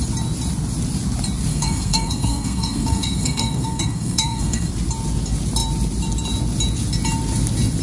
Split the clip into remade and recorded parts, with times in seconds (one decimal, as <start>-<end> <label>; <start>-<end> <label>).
0.0-1.5 recorded; 1.5-4.7 remade; 4.7-7.8 recorded